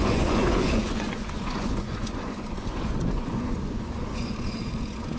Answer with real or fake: fake